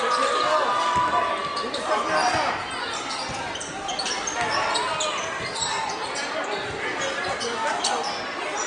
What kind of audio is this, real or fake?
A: real